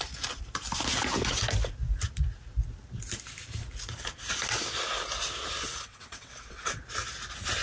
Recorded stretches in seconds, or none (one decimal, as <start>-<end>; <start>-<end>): 0.0-5.7; 6.8-7.6